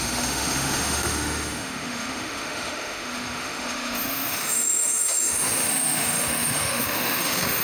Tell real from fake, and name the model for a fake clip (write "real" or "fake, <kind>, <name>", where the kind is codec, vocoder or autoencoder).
fake, autoencoder, DAC-VAE